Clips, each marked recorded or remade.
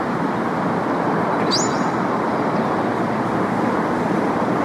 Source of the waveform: recorded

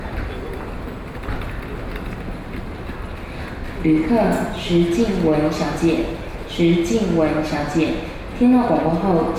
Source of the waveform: recorded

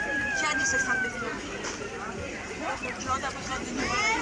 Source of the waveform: remade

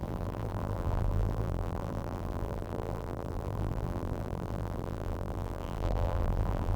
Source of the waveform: remade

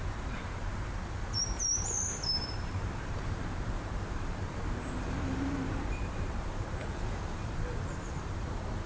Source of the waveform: remade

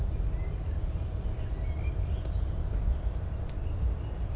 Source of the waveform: recorded